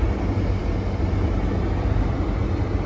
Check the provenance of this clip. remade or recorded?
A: recorded